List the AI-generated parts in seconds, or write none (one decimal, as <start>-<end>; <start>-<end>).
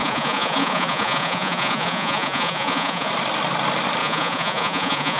0.0-3.1; 4.0-5.2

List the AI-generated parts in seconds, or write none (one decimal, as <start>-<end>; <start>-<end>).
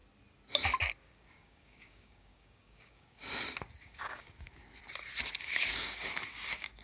1.0-3.2; 3.8-4.6; 5.4-6.8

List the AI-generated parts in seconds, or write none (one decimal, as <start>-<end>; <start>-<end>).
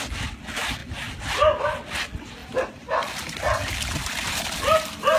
none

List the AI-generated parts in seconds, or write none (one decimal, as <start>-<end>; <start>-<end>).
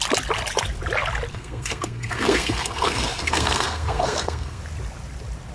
1.3-4.6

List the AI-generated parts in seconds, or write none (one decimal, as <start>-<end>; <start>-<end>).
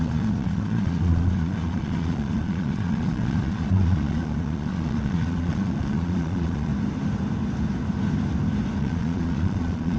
0.0-6.7; 8.8-10.0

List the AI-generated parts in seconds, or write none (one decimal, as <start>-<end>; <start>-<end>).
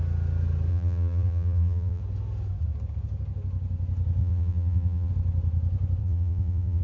0.7-2.0; 4.2-5.1; 6.0-6.8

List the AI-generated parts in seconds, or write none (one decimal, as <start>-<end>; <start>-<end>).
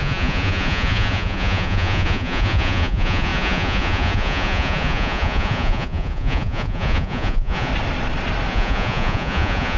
0.0-7.7; 8.5-9.8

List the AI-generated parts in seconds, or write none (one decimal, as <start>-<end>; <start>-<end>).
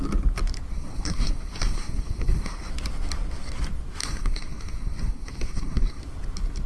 0.7-2.7; 4.0-6.0